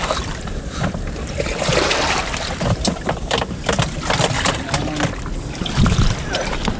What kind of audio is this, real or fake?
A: fake